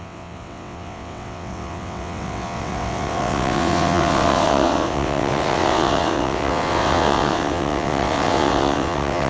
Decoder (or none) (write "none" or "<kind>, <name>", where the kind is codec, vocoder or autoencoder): vocoder, WaveNeXt